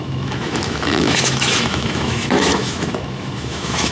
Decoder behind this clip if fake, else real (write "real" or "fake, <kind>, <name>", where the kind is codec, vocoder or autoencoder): fake, autoencoder, DAC-VAE